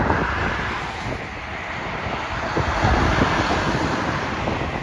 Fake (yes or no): no